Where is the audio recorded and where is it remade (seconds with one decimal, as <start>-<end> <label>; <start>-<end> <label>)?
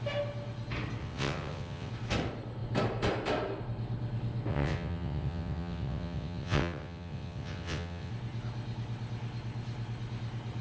0.0-1.0 recorded; 1.0-1.9 remade; 1.9-4.5 recorded; 4.5-8.1 remade; 8.1-10.6 recorded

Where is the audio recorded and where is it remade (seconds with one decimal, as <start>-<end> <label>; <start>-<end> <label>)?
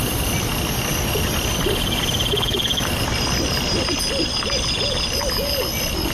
0.0-6.1 recorded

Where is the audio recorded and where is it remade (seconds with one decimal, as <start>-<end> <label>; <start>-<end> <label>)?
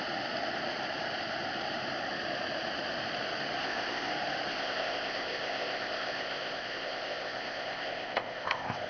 0.0-3.6 recorded; 3.6-4.1 remade; 4.1-4.5 recorded; 4.5-8.9 remade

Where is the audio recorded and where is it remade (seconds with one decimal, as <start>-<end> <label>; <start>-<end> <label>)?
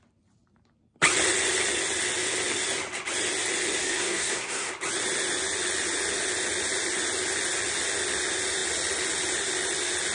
0.0-3.8 recorded; 3.8-4.7 remade; 4.7-10.1 recorded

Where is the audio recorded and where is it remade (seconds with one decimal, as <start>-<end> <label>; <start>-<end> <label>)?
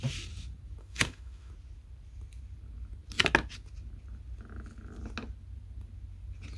0.0-0.8 recorded; 0.8-1.5 remade; 1.5-6.6 recorded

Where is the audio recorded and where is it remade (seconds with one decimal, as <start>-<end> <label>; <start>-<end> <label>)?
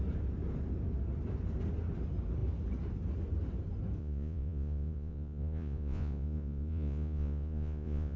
0.0-4.0 recorded; 4.0-8.2 remade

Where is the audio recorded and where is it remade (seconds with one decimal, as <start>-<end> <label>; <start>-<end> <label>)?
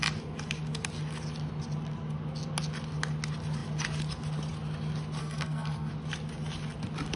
0.0-5.2 recorded; 5.2-5.9 remade; 5.9-7.2 recorded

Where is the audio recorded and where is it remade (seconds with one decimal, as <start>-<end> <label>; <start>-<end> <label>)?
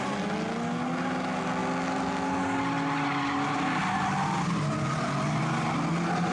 0.0-6.3 recorded